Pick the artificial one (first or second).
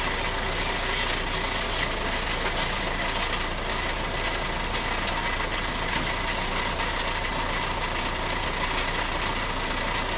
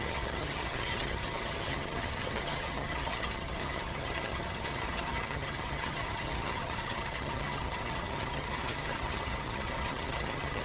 second